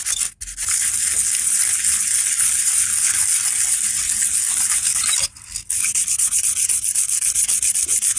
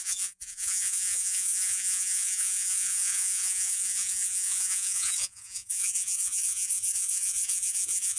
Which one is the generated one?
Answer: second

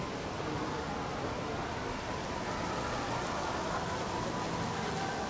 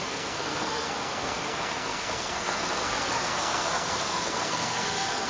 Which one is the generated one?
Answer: second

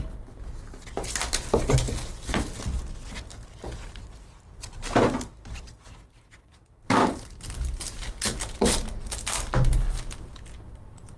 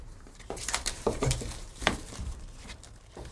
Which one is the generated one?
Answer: second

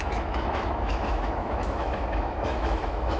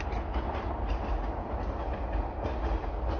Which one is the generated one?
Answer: first